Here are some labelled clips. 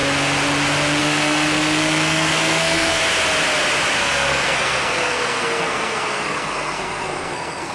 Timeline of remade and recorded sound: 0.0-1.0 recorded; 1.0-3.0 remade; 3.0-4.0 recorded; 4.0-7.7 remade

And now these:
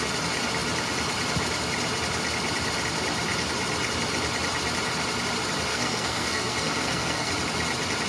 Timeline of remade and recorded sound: 0.0-5.7 recorded; 5.7-7.3 remade; 7.3-8.1 recorded

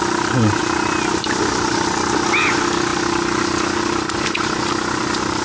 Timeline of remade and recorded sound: 0.0-5.4 recorded

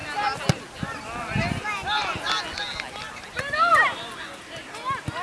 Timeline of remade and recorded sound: 0.0-5.2 recorded

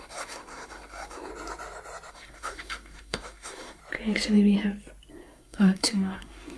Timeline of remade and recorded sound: 0.0-1.3 remade; 1.3-2.1 recorded; 2.1-3.8 remade; 3.8-5.1 recorded; 5.1-6.6 remade